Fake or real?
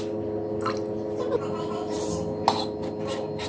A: real